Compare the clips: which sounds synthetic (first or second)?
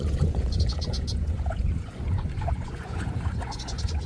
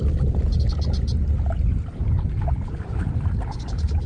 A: first